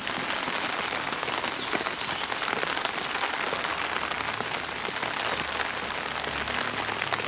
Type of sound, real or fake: real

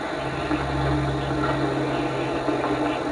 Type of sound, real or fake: real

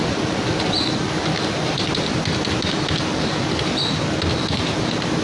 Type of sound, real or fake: real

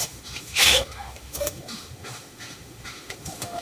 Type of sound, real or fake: fake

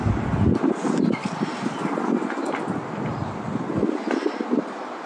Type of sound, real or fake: real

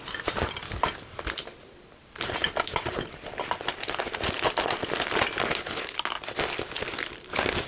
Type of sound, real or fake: real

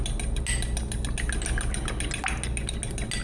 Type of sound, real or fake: real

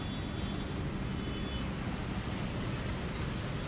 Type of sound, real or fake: real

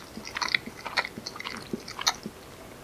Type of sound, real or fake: real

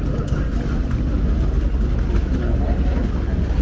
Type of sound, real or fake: real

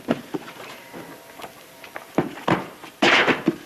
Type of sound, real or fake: real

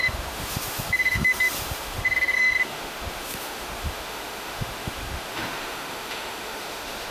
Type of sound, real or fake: fake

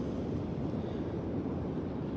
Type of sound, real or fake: real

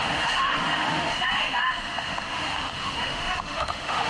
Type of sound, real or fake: fake